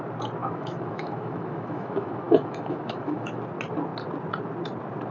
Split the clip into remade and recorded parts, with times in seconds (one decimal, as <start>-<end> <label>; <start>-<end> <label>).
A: 0.0-0.4 recorded; 0.4-3.4 remade; 3.4-5.1 recorded